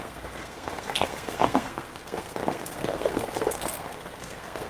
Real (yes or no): no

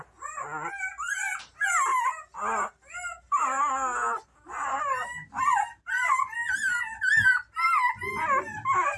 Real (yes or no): yes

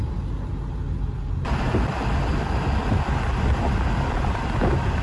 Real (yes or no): yes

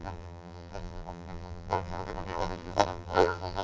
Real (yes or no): no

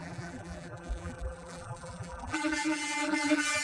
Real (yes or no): no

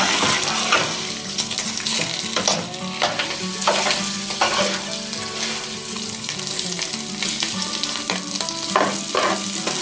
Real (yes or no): yes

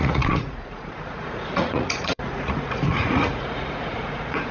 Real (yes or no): no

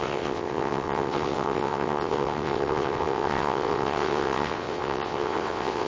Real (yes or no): no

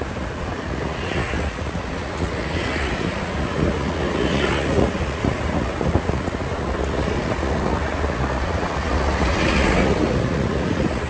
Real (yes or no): no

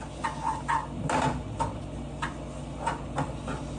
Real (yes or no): yes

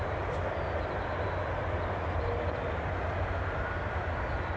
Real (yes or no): yes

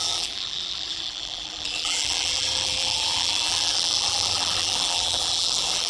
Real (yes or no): no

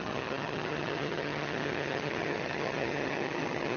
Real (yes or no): no